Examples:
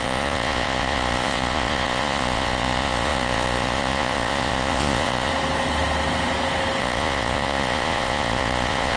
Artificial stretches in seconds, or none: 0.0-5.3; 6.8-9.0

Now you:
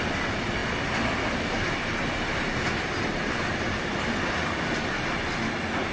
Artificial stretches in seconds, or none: none

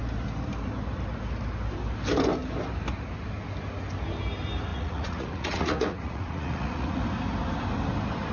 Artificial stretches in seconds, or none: 4.7-7.0

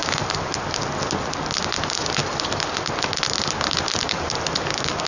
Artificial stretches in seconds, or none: none